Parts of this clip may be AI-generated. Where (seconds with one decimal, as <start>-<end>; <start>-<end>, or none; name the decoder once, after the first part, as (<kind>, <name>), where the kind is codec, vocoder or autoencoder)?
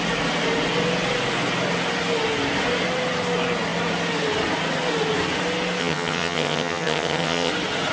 5.8-7.5 (vocoder, HiFi-GAN)